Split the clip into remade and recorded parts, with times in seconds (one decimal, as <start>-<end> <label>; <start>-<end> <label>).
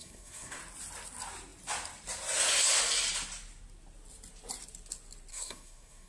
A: 0.0-0.6 remade; 0.6-5.3 recorded; 5.3-6.1 remade